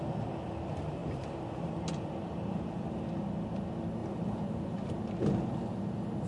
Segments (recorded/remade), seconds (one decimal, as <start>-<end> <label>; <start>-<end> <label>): 0.0-6.3 recorded